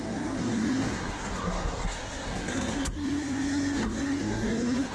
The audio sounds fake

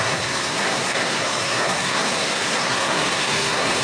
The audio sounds fake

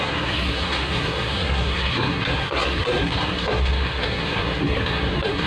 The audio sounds fake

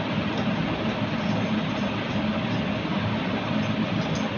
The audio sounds real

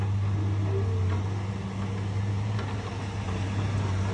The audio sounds real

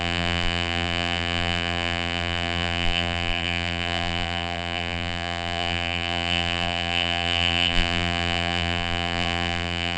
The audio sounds fake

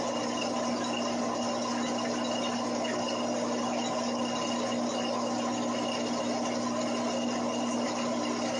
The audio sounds real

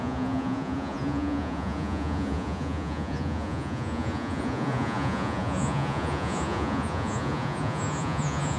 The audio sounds fake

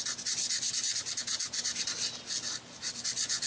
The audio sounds real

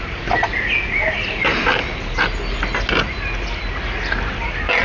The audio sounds real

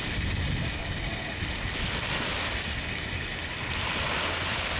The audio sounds real